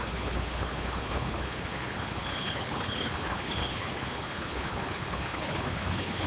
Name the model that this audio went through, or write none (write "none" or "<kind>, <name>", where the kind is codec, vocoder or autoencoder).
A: codec, HILCodec